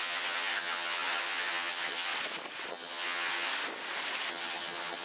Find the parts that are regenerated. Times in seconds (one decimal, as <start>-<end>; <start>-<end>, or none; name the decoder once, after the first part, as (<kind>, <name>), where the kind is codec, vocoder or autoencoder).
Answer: 0.0-2.1 (vocoder, HiFi-GAN); 2.7-3.5; 4.3-5.0